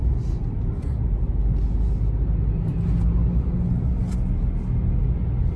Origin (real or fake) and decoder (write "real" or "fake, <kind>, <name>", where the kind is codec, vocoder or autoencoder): real